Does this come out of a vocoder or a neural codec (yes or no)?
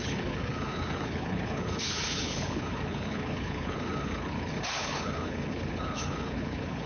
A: yes